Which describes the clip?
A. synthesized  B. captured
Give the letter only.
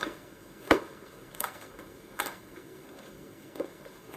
A